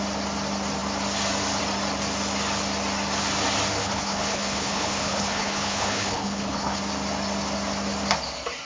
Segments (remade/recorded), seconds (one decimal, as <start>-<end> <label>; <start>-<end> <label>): 0.0-3.8 recorded; 3.8-6.8 remade; 6.8-8.6 recorded

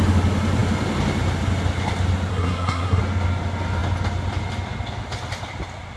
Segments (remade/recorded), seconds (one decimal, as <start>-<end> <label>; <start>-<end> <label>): 0.0-2.3 recorded; 2.3-3.0 remade; 3.0-6.0 recorded

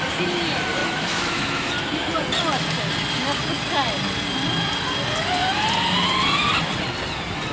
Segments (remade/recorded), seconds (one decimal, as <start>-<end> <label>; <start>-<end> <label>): 0.0-0.8 recorded; 0.8-1.7 remade; 1.7-7.5 recorded

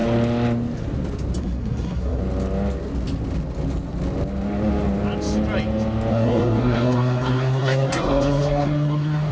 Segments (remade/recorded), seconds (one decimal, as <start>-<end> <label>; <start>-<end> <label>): 0.0-1.4 recorded; 1.4-2.2 remade; 2.2-6.1 recorded; 6.1-9.3 remade

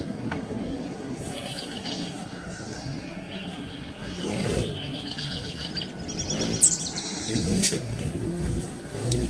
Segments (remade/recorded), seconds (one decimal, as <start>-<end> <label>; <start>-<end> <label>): 0.0-5.7 remade; 5.7-7.0 recorded; 7.0-9.3 remade